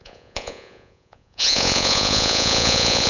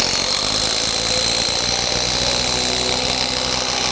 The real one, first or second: second